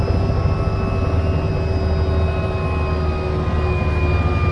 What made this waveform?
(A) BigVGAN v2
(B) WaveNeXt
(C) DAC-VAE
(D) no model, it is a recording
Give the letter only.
D